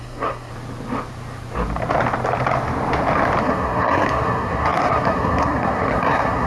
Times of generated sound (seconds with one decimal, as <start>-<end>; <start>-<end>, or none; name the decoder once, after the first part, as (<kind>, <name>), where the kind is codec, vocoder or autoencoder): 0.0-0.5 (codec, SNAC); 3.4-6.5